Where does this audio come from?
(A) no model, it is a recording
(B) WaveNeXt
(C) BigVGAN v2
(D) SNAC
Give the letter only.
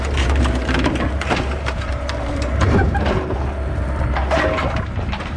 C